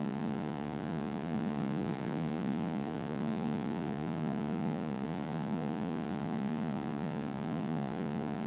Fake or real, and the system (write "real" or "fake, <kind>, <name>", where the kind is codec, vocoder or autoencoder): fake, vocoder, Vocos